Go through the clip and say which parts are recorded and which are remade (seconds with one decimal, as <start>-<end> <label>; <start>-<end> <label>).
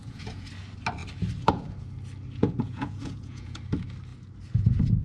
0.0-0.5 remade; 0.5-2.4 recorded; 2.4-3.6 remade; 3.6-5.0 recorded